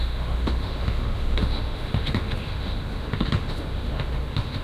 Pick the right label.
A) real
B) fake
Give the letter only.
B